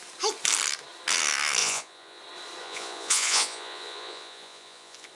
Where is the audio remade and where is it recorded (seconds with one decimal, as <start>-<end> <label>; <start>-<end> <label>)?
0.0-1.6 recorded; 1.6-2.2 remade; 2.2-2.6 recorded; 2.6-5.1 remade